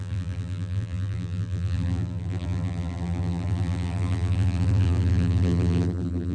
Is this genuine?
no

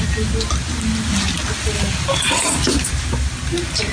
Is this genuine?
yes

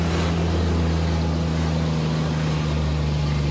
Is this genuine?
yes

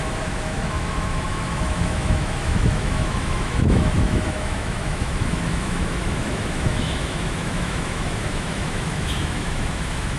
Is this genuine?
no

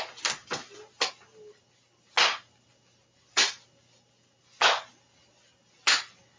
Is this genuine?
yes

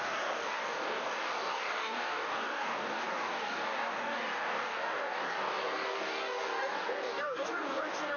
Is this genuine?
no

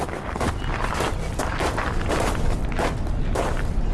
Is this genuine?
yes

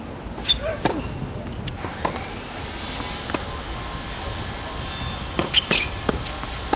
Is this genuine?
yes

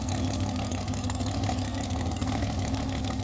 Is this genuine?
no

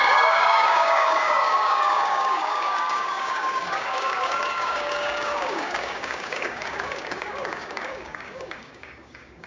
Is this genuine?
no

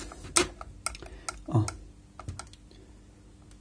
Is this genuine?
yes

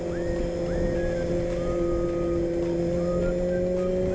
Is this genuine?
yes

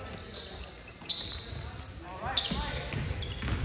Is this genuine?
yes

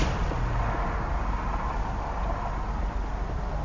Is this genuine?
yes